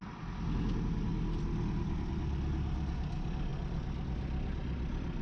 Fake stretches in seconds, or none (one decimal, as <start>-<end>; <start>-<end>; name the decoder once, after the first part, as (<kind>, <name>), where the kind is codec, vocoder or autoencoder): none